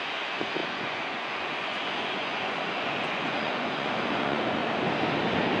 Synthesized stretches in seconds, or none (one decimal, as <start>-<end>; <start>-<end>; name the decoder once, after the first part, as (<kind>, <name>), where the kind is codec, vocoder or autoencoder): 0.0-4.6 (vocoder, Vocos)